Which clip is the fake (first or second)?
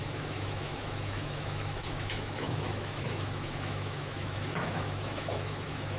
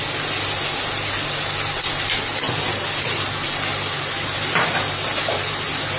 first